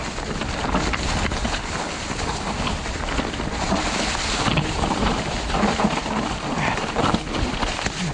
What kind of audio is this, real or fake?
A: real